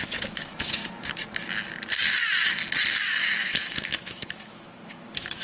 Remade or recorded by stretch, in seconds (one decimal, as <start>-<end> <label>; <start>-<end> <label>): 0.0-0.8 remade; 0.8-3.1 recorded; 3.1-5.4 remade